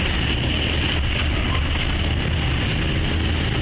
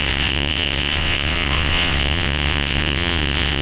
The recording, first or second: first